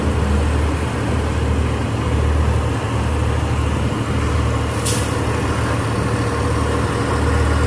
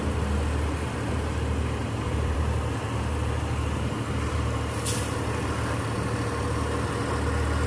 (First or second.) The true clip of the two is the first